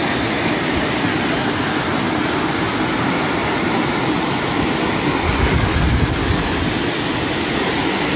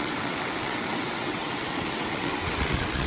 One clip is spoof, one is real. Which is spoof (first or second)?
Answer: second